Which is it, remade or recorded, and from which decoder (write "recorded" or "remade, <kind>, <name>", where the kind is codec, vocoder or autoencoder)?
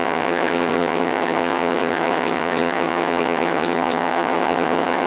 remade, vocoder, HiFi-GAN